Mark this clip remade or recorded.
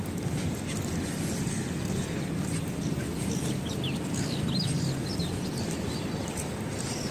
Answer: recorded